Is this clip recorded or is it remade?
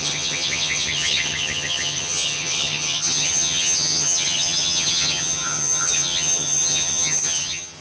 remade